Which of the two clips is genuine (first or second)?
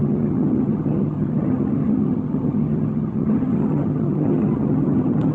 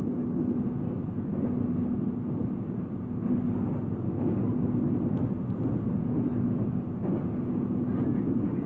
second